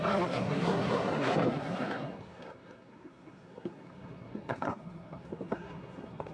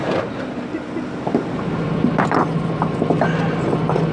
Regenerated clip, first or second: first